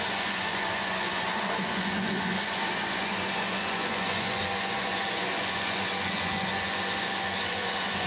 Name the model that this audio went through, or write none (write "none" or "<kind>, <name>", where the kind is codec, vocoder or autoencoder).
vocoder, Vocos